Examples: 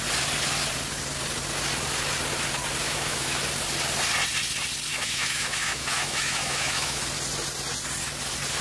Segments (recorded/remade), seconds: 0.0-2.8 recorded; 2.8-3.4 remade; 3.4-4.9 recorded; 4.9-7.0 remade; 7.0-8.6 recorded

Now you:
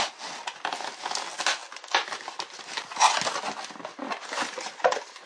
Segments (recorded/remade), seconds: 0.0-5.3 recorded

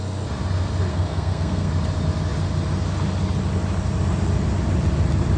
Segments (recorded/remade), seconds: 0.0-0.9 recorded; 0.9-1.7 remade; 1.7-5.4 recorded

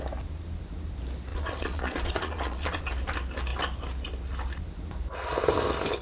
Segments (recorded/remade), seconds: 0.0-1.3 recorded; 1.3-2.8 remade; 2.8-6.0 recorded